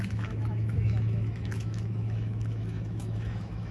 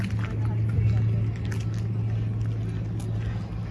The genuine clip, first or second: second